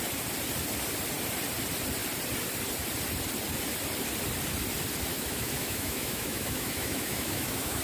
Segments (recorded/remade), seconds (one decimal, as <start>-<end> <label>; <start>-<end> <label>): 0.0-5.1 recorded; 5.1-7.8 remade